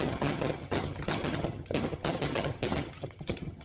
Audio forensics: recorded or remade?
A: remade